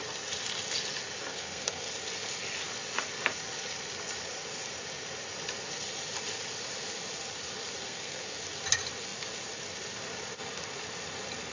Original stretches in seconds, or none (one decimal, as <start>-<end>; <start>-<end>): 0.0-1.3; 1.9-7.8; 8.4-11.5